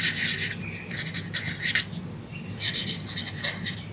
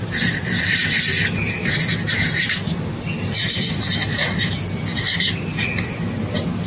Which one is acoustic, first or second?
first